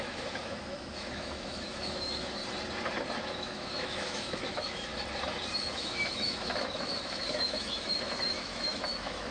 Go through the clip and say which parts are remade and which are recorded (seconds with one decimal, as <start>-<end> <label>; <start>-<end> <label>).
0.0-2.4 remade; 2.4-3.2 recorded; 3.2-4.9 remade; 4.9-5.6 recorded; 5.6-9.3 remade

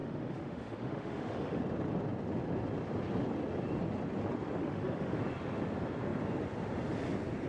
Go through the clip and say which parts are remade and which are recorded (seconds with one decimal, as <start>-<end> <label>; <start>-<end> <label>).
0.0-1.6 remade; 1.6-4.6 recorded; 4.6-5.2 remade; 5.2-7.5 recorded